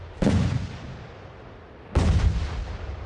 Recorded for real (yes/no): yes